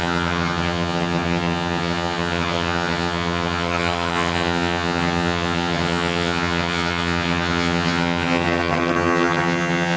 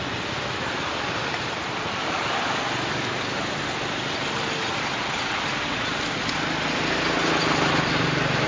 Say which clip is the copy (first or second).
first